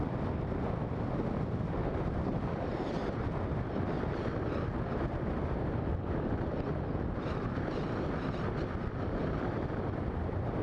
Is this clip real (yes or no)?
yes